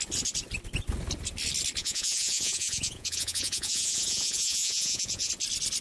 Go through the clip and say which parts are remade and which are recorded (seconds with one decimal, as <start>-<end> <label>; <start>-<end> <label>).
0.0-1.8 recorded; 1.8-5.3 remade; 5.3-5.8 recorded